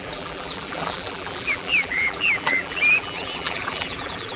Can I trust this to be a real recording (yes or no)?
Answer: no